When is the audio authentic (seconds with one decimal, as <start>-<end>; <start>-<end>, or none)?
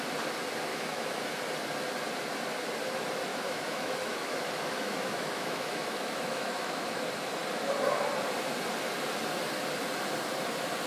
0.0-0.7; 1.2-3.3; 7.0-10.9